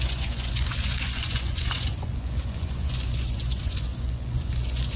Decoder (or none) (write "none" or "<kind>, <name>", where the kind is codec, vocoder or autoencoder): vocoder, Vocos